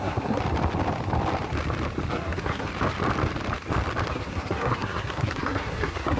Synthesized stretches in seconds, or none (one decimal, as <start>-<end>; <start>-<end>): 0.0-0.4; 2.1-2.7; 4.1-6.2